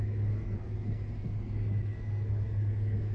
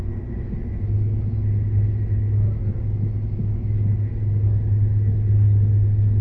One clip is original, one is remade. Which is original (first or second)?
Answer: second